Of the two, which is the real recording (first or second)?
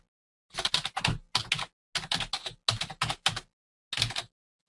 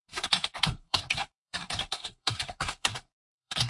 first